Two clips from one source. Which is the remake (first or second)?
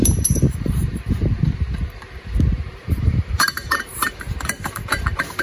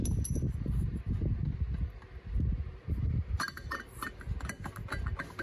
first